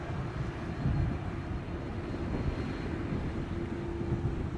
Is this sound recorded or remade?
recorded